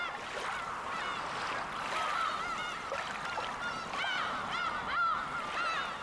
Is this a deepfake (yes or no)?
no